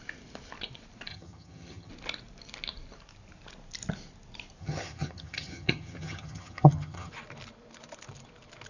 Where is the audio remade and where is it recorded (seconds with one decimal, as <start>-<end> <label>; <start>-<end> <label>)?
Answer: 0.0-1.1 recorded; 1.1-1.9 remade; 1.9-4.6 recorded; 4.6-7.1 remade; 7.1-8.7 recorded